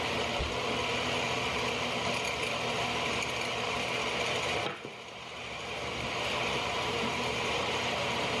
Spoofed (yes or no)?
no